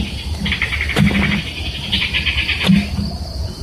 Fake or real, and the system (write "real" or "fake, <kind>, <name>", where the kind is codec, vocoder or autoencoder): real